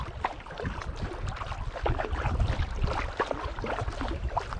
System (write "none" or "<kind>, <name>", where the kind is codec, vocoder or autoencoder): none